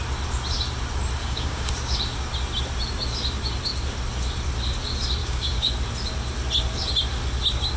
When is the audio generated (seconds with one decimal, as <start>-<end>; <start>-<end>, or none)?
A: 1.2-1.7; 5.2-5.7